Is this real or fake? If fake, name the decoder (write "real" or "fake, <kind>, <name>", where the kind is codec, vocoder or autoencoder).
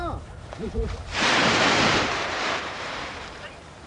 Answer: fake, vocoder, BigVGAN v2